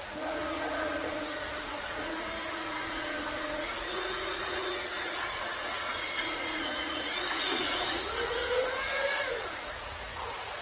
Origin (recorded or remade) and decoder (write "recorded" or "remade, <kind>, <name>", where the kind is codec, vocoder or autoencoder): remade, vocoder, Vocos